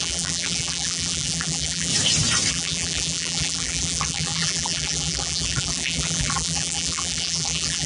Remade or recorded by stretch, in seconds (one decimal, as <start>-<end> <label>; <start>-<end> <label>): 0.0-1.9 remade; 1.9-2.5 recorded; 2.5-7.9 remade